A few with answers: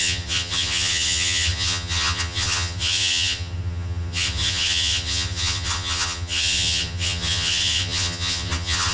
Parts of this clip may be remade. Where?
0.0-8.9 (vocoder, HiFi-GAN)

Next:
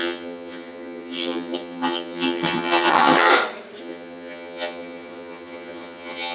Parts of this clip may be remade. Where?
0.0-3.3 (vocoder, HiFi-GAN); 3.8-6.3